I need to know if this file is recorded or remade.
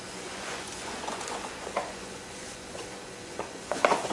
remade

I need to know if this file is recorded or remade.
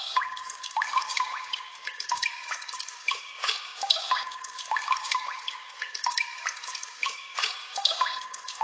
remade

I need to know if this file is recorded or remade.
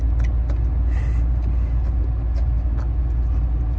recorded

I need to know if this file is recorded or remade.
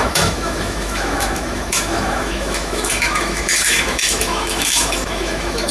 remade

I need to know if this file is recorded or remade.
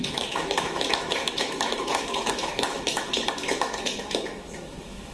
remade